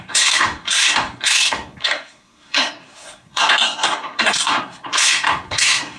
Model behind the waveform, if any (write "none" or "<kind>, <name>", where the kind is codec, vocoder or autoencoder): codec, SNAC